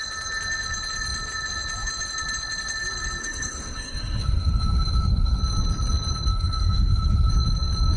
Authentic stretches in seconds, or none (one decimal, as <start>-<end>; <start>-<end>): 0.0-3.2; 5.4-6.3; 7.3-8.0